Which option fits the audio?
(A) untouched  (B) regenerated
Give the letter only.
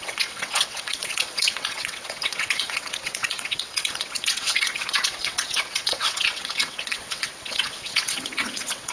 B